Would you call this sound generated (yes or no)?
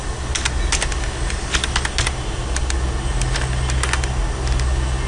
no